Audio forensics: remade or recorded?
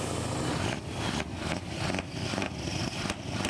recorded